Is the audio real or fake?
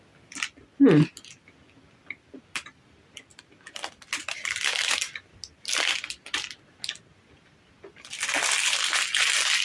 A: real